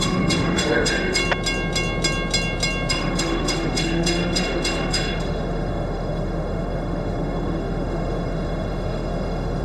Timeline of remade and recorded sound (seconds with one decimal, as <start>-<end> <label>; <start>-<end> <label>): 0.0-1.2 remade; 1.2-2.9 recorded; 2.9-9.6 remade